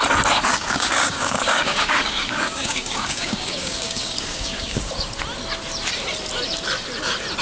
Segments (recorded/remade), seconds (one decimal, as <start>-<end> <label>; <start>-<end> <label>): 0.0-0.5 recorded; 0.5-4.9 remade; 4.9-7.4 recorded